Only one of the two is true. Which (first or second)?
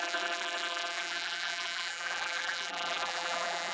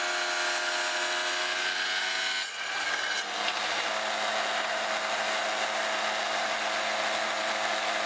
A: second